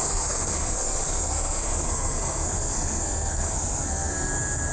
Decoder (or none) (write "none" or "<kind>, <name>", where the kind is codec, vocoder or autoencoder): codec, SNAC